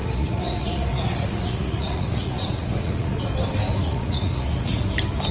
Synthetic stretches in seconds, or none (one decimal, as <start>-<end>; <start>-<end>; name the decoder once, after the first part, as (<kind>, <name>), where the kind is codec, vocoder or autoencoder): 0.0-3.2 (vocoder, Vocos); 3.8-4.8